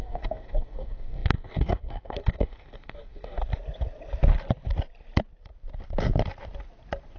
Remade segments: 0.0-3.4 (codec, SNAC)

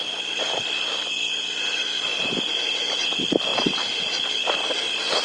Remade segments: none

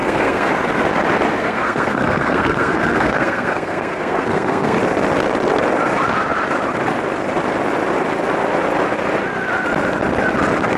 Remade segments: 0.0-0.5 (codec, SNAC); 1.4-4.8

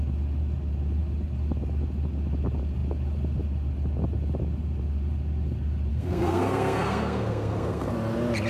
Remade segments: 5.9-7.9 (codec, SNAC)

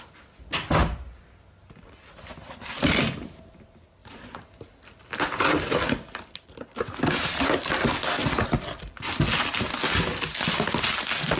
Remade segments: none

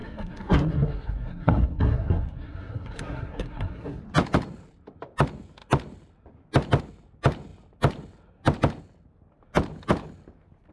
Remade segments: 0.0-4.0 (codec, SNAC)